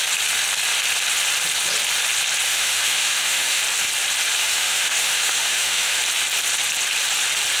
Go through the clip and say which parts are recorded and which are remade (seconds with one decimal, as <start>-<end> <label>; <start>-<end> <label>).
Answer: 0.0-2.5 recorded; 2.5-3.6 remade; 3.6-4.4 recorded; 4.4-6.0 remade; 6.0-7.6 recorded